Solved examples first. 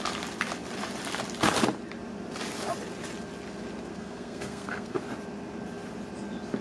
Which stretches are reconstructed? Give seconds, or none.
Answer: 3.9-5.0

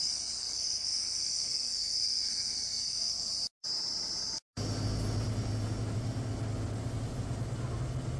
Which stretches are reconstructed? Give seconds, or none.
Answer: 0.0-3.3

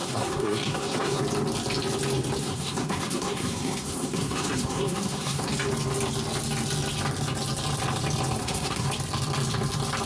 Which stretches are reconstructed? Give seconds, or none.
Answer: 0.0-1.2; 2.4-5.5; 8.4-8.9